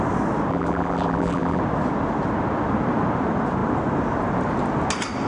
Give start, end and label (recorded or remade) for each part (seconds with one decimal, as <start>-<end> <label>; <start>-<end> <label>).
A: 0.0-0.5 recorded; 0.5-1.6 remade; 1.6-5.3 recorded